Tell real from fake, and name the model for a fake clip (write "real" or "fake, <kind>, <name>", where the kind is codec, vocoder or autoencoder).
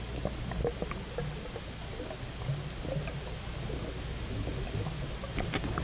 real